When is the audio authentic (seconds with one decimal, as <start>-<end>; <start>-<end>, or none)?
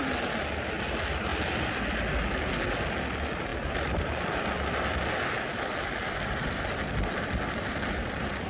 0.0-8.5